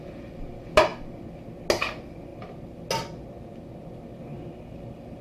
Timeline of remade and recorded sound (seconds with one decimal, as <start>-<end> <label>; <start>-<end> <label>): 0.0-5.2 recorded